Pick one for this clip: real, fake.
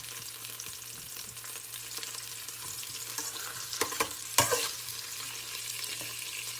real